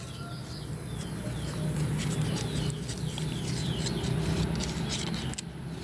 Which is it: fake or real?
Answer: real